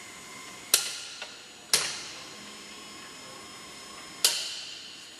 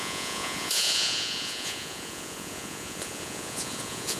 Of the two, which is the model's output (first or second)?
second